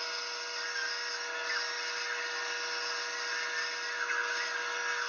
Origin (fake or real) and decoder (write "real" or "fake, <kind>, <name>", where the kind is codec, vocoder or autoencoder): real